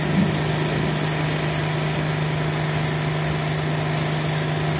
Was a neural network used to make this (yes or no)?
no